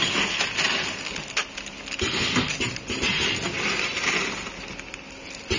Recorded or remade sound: recorded